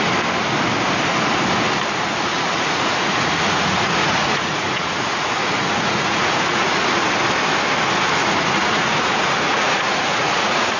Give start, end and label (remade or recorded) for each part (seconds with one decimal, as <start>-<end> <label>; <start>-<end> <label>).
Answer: 0.0-2.3 recorded; 2.3-7.0 remade; 7.0-8.2 recorded; 8.2-10.8 remade